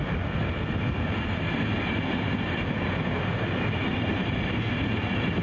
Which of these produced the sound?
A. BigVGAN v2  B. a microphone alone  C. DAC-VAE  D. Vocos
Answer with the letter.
B